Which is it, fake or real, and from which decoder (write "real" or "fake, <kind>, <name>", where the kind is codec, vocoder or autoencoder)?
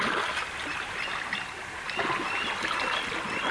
real